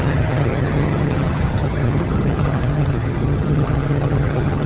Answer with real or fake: fake